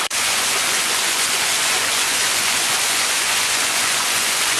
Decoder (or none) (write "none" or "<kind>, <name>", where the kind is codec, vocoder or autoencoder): vocoder, Vocos